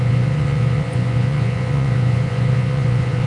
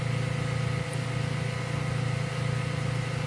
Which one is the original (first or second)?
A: second